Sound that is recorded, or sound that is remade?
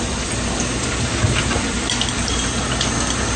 recorded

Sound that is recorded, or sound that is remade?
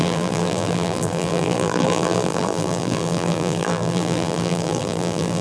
remade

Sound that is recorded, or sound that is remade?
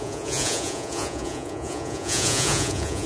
remade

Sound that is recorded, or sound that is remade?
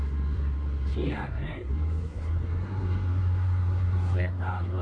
remade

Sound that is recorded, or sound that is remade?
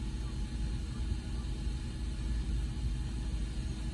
recorded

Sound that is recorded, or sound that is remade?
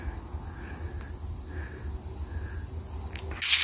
recorded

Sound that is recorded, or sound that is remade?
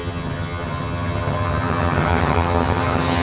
remade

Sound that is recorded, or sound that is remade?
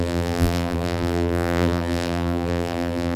remade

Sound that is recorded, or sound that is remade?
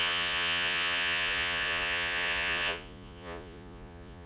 remade